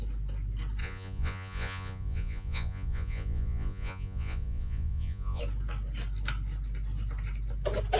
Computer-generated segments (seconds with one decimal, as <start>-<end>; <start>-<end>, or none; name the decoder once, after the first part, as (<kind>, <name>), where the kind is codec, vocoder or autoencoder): 0.8-5.4 (vocoder, Vocos)